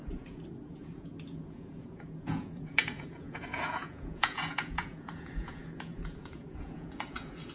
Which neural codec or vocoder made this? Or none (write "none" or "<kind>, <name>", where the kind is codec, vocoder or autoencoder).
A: vocoder, Vocos